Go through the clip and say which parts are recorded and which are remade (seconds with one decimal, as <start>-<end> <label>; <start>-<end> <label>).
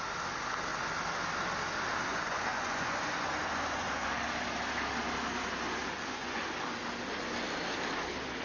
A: 0.0-2.1 recorded; 2.1-4.1 remade; 4.1-5.8 recorded; 5.8-6.4 remade; 6.4-8.4 recorded